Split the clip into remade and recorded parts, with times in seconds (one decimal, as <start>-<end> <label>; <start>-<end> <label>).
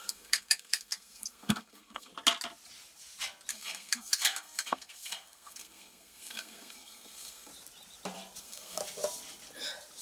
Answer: 0.0-2.1 remade; 2.1-3.5 recorded; 3.5-7.5 remade; 7.5-8.4 recorded; 8.4-8.8 remade; 8.8-10.0 recorded